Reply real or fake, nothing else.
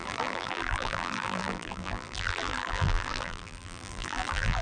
fake